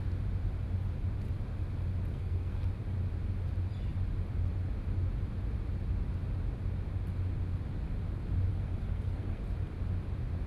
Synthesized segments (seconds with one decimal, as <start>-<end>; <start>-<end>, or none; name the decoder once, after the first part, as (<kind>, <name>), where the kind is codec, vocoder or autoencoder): 2.1-2.7 (codec, SNAC); 8.5-9.4